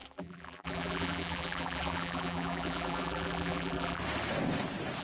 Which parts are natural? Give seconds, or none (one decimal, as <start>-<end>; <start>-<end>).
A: 4.0-5.0